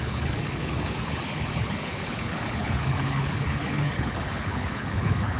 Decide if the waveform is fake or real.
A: fake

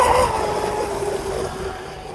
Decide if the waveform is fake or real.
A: real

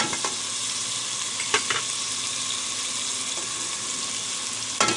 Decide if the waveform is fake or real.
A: real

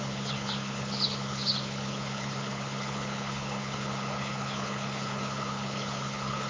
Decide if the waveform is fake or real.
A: fake